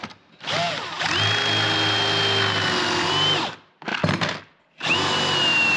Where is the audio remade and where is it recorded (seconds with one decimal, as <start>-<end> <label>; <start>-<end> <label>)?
0.0-5.8 recorded